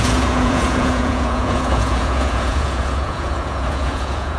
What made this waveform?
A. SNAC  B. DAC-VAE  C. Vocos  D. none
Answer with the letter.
C